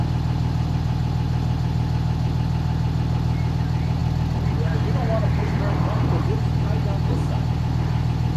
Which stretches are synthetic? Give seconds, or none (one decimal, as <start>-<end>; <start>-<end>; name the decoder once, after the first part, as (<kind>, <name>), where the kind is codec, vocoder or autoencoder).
none